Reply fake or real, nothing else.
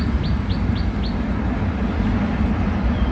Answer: real